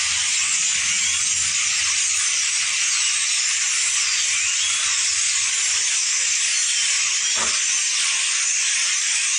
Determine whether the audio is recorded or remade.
recorded